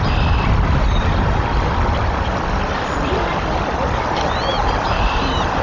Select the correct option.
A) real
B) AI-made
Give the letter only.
B